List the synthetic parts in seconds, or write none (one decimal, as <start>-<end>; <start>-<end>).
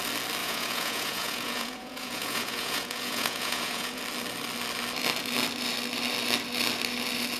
0.4-4.0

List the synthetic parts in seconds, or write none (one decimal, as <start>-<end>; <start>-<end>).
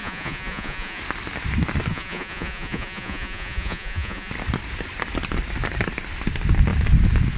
0.0-1.0; 1.9-4.3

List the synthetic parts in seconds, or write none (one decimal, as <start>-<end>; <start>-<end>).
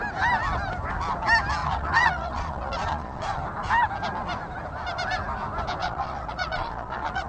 1.6-3.4; 5.8-7.3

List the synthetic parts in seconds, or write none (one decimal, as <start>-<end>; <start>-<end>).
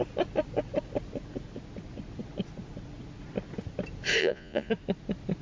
4.2-4.7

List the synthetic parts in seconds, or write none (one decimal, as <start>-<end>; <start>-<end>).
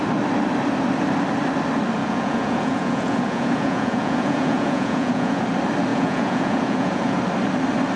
2.0-5.4; 5.9-7.2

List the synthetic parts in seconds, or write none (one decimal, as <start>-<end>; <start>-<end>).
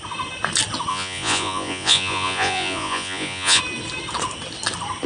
0.9-3.6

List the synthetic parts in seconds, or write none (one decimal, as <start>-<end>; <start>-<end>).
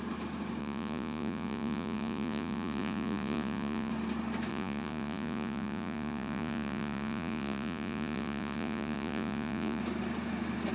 0.6-3.9; 4.5-9.8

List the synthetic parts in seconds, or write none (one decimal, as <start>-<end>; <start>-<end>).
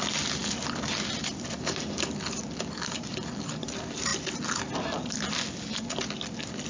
none